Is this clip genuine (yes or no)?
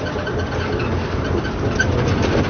yes